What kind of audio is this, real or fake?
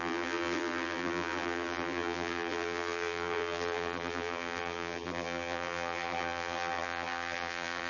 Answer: fake